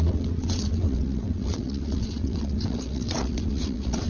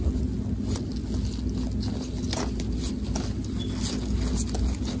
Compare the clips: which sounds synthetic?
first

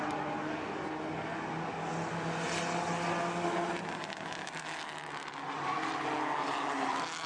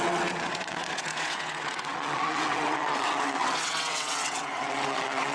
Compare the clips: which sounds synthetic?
second